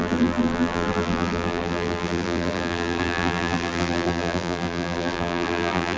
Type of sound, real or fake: fake